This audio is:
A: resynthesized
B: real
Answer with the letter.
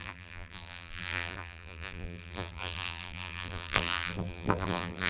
A